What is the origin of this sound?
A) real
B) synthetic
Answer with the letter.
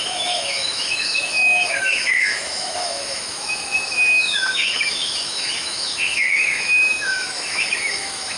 B